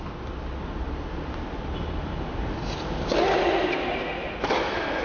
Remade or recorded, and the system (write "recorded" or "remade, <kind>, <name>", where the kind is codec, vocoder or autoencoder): recorded